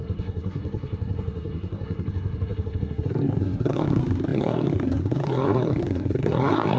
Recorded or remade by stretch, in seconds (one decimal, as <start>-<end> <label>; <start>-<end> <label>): 0.0-6.8 remade